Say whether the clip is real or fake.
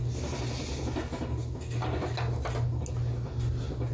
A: real